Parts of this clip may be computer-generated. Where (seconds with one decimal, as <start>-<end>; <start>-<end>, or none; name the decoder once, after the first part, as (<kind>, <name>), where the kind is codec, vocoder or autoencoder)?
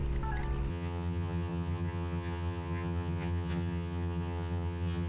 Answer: 0.7-5.1 (vocoder, HiFi-GAN)